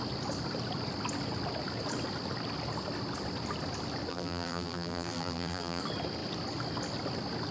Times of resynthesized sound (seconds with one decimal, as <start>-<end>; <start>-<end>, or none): 4.1-5.8